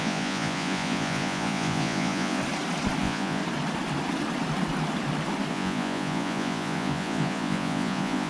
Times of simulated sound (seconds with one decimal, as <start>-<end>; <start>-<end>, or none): 0.0-2.4; 3.0-3.4; 5.5-8.3